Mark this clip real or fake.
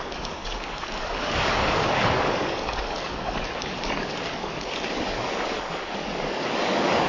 fake